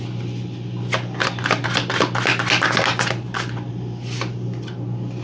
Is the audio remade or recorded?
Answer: recorded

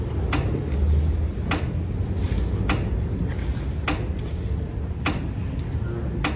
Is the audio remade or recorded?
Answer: recorded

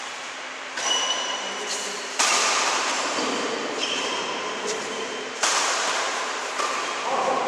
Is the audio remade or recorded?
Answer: remade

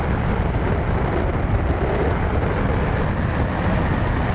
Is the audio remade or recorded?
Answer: recorded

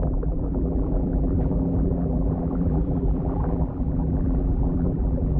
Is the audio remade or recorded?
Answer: remade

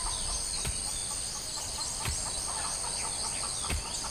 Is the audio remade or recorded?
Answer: recorded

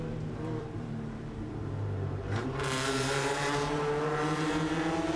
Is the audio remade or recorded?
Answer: remade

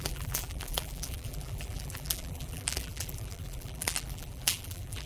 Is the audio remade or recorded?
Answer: remade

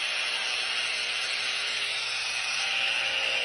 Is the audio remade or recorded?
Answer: recorded